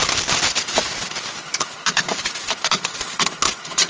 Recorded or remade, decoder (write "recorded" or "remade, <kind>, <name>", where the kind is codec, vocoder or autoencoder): remade, vocoder, BigVGAN v2